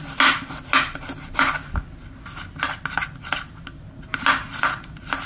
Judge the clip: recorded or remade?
recorded